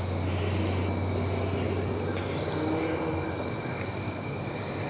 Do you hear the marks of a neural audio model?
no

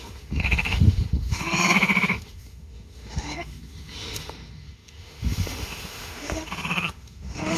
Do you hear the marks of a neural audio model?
yes